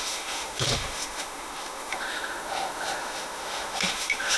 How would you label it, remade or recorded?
remade